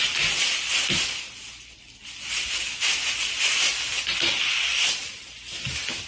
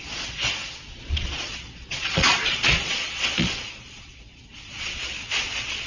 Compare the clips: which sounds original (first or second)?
first